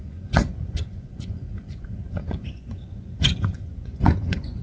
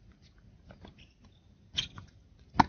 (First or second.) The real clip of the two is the second